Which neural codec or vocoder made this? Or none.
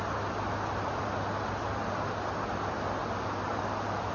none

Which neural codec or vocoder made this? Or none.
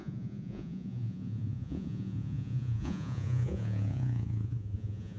vocoder, Vocos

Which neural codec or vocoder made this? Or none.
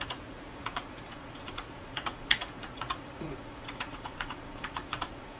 vocoder, Vocos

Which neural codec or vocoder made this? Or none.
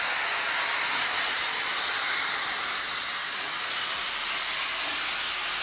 none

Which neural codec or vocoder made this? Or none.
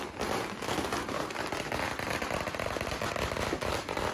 vocoder, BigVGAN v2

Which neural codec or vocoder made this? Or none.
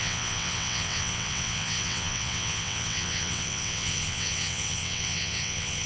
vocoder, WaveNeXt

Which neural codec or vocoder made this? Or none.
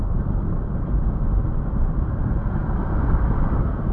none